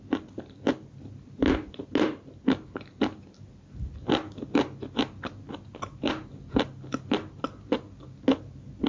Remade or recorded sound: recorded